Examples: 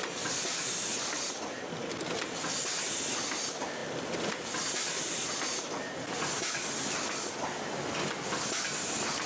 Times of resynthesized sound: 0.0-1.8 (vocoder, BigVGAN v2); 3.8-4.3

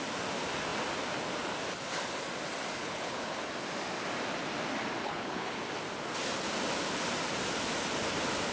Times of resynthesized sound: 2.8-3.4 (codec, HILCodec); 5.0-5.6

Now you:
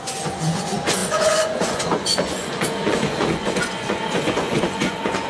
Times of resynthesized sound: 0.0-5.3 (vocoder, Vocos)

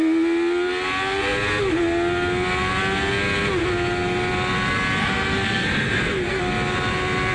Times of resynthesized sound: 5.0-6.4 (codec, SNAC)

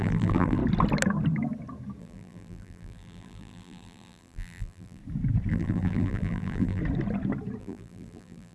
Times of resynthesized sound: 0.0-0.6 (vocoder, BigVGAN v2); 2.0-5.0; 5.5-6.8; 7.6-8.5

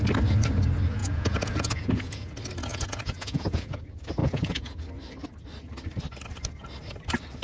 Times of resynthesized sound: 1.0-2.3 (vocoder, Vocos); 2.7-3.8; 4.2-4.8

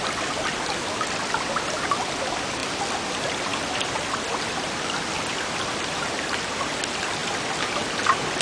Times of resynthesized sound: none

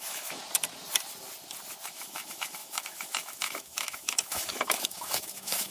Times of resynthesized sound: 0.0-0.4 (autoencoder, DAC-VAE); 1.9-5.7